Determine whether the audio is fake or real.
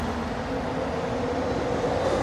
real